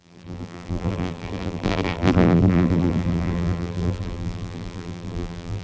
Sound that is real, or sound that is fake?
fake